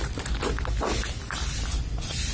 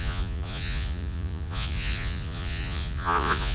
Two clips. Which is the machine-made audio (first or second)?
second